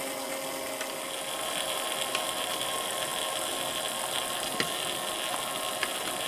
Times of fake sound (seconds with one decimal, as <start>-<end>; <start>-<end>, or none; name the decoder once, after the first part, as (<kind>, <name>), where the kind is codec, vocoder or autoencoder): none